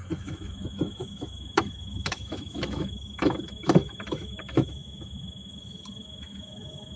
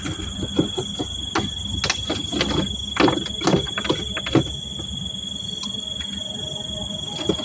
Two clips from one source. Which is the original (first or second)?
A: second